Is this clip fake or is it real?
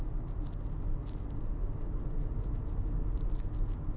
real